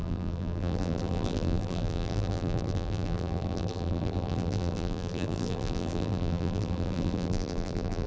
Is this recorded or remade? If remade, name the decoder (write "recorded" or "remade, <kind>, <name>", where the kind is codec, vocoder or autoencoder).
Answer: remade, vocoder, BigVGAN v2